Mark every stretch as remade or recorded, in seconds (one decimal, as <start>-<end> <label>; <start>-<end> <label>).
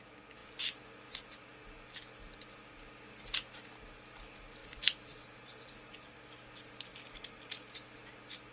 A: 0.0-4.6 recorded; 4.6-5.7 remade; 5.7-8.5 recorded